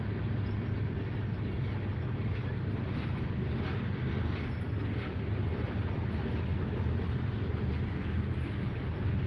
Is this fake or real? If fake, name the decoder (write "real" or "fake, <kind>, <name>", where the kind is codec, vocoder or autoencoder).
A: real